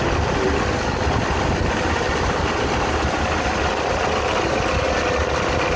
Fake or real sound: real